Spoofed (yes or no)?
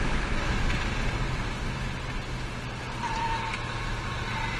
no